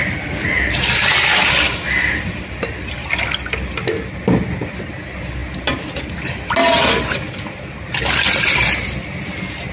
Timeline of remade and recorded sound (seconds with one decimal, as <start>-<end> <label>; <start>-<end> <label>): 0.0-9.7 recorded